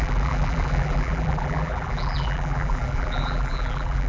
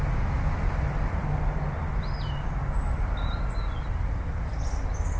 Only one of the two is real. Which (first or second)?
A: second